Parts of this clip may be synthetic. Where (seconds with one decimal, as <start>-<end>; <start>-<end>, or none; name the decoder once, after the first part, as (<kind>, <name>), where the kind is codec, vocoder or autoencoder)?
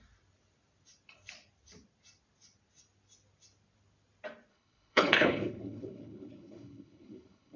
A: 4.5-7.6 (codec, HILCodec)